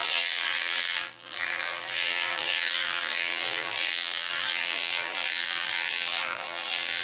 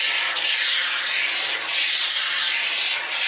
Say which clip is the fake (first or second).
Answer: first